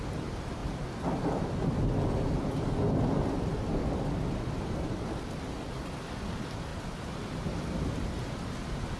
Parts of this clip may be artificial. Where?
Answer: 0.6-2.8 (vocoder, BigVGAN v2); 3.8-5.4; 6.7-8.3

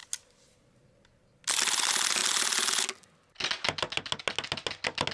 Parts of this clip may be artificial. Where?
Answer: none

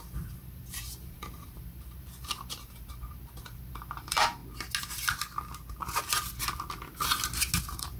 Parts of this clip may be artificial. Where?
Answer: 0.0-4.4 (vocoder, BigVGAN v2); 7.6-8.0

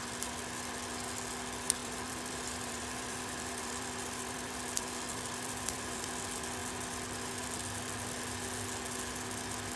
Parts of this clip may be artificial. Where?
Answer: 1.8-6.1 (vocoder, BigVGAN v2)

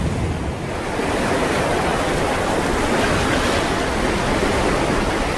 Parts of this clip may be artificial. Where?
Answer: none

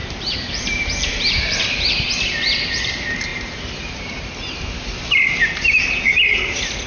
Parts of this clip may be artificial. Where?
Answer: 0.0-1.6 (vocoder, BigVGAN v2); 3.3-6.4

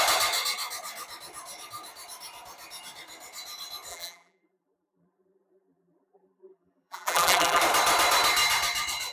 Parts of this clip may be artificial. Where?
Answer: 3.9-7.6 (vocoder, BigVGAN v2)

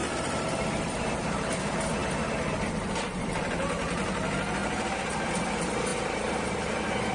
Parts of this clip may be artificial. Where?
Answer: 0.0-1.6 (vocoder, BigVGAN v2); 2.0-3.5; 4.6-5.4; 5.9-7.1